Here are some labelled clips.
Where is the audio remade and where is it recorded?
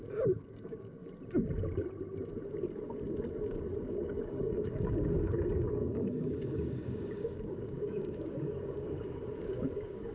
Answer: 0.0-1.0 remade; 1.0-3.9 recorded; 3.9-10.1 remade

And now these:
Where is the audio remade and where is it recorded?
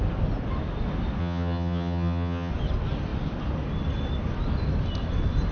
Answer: 0.0-1.2 recorded; 1.2-2.5 remade; 2.5-5.5 recorded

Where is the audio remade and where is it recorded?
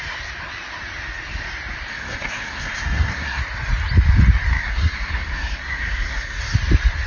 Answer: 0.0-1.9 recorded; 1.9-3.4 remade; 3.4-4.5 recorded; 4.5-6.4 remade; 6.4-7.1 recorded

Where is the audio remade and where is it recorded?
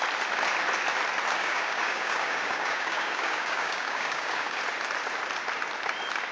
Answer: 0.0-1.4 recorded; 1.4-4.6 remade; 4.6-6.3 recorded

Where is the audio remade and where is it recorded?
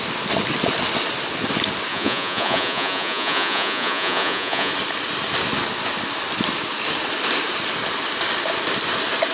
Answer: 0.0-1.9 recorded; 1.9-4.7 remade; 4.7-9.3 recorded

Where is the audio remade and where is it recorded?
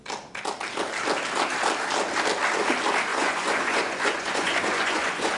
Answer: 0.0-3.1 recorded; 3.1-5.4 remade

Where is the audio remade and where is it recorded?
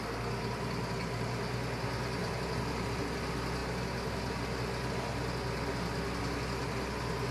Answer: 0.0-7.3 recorded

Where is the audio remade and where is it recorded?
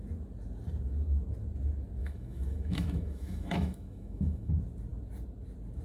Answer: 0.0-2.0 recorded; 2.0-4.5 remade; 4.5-5.8 recorded